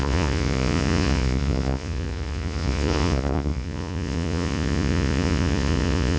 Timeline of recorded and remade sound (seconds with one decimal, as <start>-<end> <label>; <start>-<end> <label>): 0.0-6.2 remade